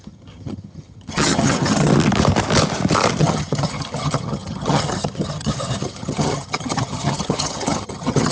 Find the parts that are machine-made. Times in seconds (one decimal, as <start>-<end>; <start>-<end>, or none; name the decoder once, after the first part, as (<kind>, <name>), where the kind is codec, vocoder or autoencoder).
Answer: 0.0-1.9 (vocoder, HiFi-GAN); 3.2-8.3